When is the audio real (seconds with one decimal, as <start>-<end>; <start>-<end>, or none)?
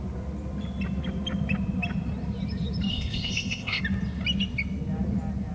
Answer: 0.0-2.9; 3.8-5.5